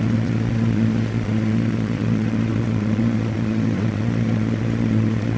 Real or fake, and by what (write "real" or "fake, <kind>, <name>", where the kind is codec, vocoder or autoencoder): fake, vocoder, Vocos